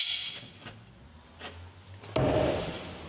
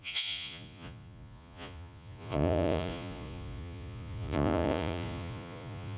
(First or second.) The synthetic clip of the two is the second